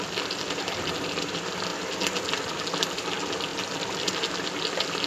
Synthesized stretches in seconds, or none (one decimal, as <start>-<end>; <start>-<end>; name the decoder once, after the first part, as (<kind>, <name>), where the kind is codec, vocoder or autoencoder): none